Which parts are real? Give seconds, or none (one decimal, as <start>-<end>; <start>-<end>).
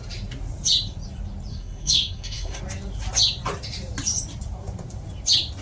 0.0-1.5; 2.6-5.6